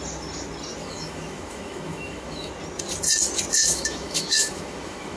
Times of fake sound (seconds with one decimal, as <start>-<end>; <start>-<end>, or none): 0.8-2.5; 3.6-5.2